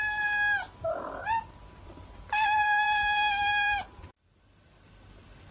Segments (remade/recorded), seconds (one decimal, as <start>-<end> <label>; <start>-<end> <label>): 0.0-1.6 recorded; 1.6-4.0 remade; 4.0-5.5 recorded